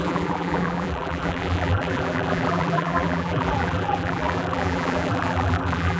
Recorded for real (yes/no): no